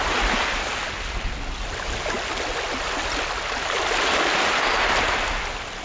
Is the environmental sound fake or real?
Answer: real